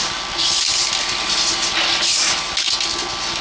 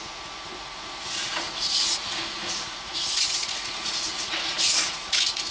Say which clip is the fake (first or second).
second